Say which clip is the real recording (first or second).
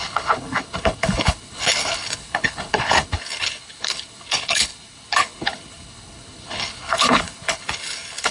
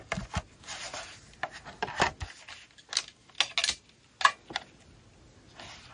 second